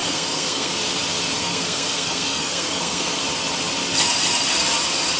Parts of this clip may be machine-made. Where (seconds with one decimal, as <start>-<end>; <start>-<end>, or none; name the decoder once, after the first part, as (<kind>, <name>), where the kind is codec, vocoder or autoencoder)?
0.0-0.7 (codec, SNAC); 1.4-3.2